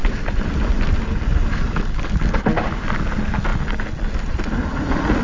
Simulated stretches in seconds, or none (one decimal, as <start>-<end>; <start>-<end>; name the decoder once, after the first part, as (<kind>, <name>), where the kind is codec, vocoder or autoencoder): none